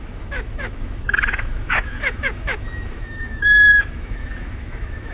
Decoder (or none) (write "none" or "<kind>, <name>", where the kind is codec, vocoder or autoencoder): autoencoder, DAC-VAE